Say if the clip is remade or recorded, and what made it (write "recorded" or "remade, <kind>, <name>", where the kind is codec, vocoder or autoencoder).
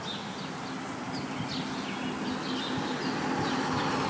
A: recorded